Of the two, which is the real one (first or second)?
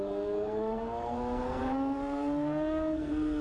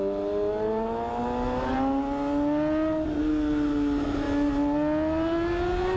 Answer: second